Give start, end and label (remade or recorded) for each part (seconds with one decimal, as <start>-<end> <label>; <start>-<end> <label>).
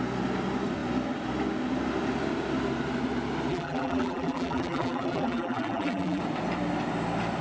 0.0-3.5 recorded; 3.5-6.2 remade; 6.2-7.4 recorded